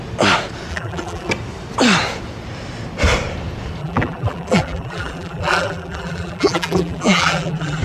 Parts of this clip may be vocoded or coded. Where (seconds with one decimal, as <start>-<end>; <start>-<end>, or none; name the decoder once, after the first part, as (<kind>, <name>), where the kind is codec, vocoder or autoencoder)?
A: 0.7-1.3 (vocoder, BigVGAN v2); 3.8-7.8